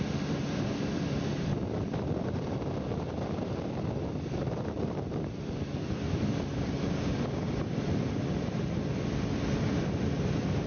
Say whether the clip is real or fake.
real